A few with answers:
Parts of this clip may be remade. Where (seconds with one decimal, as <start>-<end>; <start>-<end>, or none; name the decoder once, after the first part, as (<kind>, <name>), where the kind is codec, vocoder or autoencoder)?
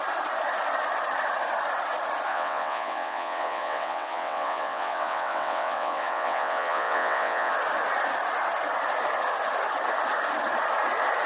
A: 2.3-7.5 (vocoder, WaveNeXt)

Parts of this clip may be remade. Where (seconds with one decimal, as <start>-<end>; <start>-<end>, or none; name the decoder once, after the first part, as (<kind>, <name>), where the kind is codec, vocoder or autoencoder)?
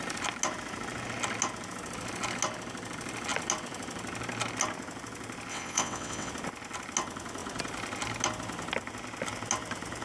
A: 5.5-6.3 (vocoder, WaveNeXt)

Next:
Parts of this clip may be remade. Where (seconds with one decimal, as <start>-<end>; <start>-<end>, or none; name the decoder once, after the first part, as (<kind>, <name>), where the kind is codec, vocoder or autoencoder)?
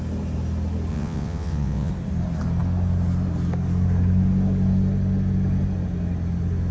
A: 0.9-1.9 (vocoder, WaveNeXt)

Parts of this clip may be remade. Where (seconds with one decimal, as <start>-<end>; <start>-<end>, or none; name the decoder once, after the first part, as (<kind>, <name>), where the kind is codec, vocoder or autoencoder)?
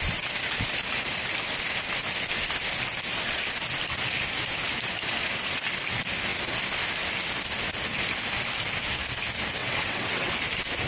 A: 9.6-10.3 (vocoder, WaveNeXt)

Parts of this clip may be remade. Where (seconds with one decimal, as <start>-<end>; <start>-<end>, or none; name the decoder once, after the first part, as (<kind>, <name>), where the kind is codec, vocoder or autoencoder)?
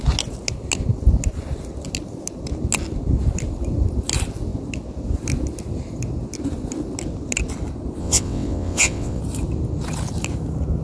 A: 8.0-9.2 (vocoder, WaveNeXt)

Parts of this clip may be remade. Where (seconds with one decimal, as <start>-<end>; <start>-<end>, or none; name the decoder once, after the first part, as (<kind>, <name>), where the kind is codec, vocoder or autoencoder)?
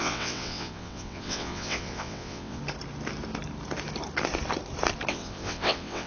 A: 0.0-2.6 (vocoder, WaveNeXt); 5.1-6.1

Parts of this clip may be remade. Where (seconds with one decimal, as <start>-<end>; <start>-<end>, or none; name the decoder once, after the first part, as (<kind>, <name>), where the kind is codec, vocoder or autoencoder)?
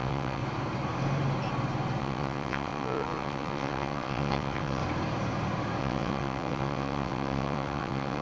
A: 0.0-0.4 (vocoder, WaveNeXt); 2.0-4.8; 5.8-8.2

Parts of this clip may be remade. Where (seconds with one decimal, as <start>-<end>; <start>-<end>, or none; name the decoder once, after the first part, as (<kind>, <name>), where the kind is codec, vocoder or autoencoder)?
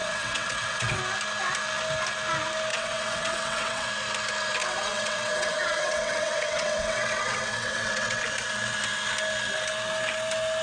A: 0.0-1.0 (vocoder, WaveNeXt); 2.7-3.9; 4.6-8.2